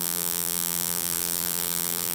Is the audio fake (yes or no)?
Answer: yes